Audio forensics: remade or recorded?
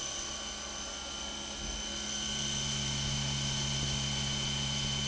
recorded